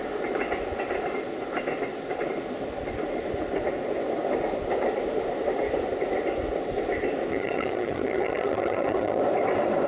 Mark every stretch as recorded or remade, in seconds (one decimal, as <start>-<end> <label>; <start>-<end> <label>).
0.0-7.3 recorded; 7.3-9.2 remade; 9.2-9.9 recorded